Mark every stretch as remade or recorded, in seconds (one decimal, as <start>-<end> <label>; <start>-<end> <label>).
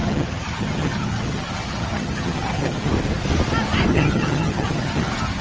0.0-2.9 remade; 2.9-3.9 recorded; 3.9-5.4 remade